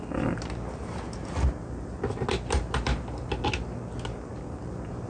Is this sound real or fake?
real